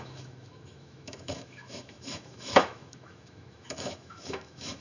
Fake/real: fake